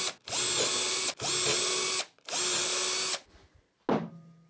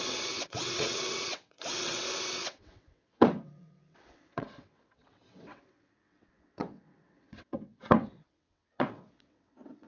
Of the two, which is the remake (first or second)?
second